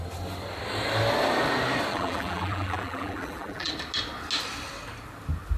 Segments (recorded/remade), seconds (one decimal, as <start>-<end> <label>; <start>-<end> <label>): 0.0-1.9 recorded; 1.9-3.7 remade; 3.7-5.6 recorded